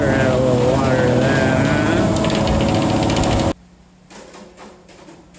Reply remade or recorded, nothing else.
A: recorded